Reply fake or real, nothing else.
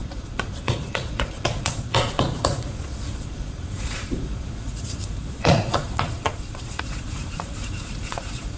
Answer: fake